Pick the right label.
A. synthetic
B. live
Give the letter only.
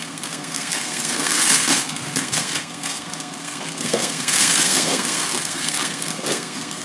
A